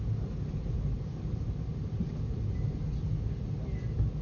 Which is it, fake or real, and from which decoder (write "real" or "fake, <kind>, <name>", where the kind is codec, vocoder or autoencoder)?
real